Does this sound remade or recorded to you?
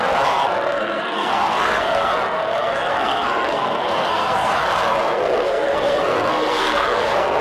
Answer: remade